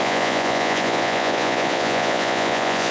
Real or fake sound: fake